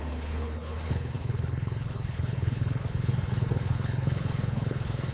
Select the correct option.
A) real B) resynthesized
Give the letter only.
B